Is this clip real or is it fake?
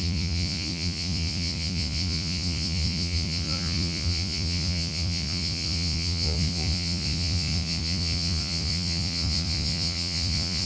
fake